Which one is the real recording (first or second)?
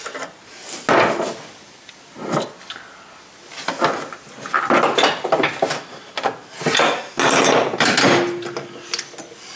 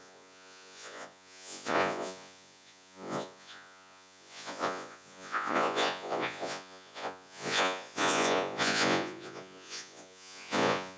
first